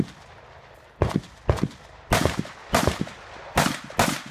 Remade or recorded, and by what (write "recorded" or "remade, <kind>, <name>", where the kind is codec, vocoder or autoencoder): recorded